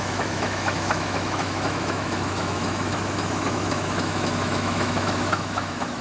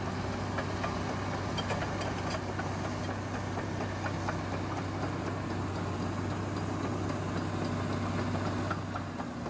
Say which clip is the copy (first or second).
first